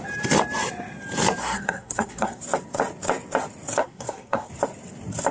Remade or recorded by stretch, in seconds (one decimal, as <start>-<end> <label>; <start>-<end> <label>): 0.0-1.4 recorded; 1.4-2.4 remade; 2.4-3.8 recorded; 3.8-4.5 remade; 4.5-5.3 recorded